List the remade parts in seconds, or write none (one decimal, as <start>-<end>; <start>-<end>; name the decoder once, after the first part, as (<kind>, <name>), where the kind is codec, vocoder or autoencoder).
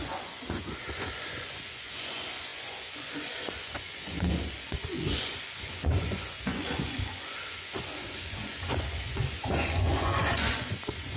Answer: 0.0-11.2 (vocoder, Vocos)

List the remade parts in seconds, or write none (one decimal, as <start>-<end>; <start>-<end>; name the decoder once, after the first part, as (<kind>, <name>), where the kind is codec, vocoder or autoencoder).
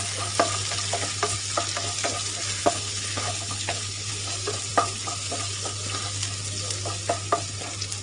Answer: 2.6-4.1 (codec, HILCodec)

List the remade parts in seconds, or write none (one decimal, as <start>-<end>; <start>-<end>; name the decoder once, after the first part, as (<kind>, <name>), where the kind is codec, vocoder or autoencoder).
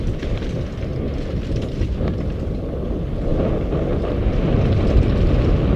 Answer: none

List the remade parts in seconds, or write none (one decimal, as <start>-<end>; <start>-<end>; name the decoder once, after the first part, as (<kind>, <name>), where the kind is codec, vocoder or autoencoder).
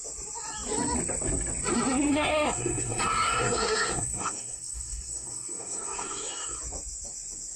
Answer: 2.1-6.6 (codec, SNAC)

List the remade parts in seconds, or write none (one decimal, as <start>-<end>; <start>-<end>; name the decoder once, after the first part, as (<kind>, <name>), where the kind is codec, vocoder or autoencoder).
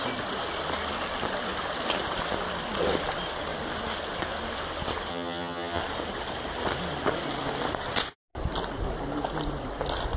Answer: 5.1-5.8 (vocoder, HiFi-GAN)